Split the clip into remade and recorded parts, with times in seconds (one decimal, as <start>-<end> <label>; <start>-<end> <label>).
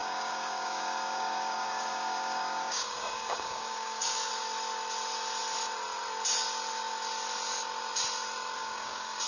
0.0-4.3 remade; 4.3-8.6 recorded; 8.6-9.3 remade